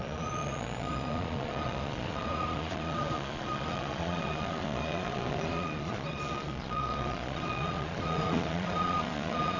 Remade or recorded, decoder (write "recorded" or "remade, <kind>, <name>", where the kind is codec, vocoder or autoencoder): remade, vocoder, Vocos